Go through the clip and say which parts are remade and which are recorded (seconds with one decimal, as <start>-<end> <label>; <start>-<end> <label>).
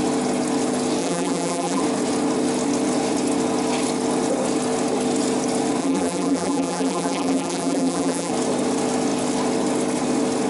0.0-1.0 recorded; 1.0-1.8 remade; 1.8-5.8 recorded; 5.8-8.3 remade; 8.3-10.5 recorded